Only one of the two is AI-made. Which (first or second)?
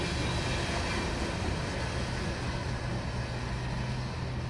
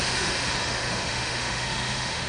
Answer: second